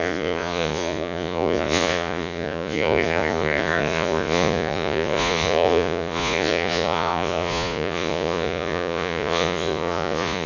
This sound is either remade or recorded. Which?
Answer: remade